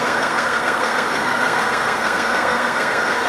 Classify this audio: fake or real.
fake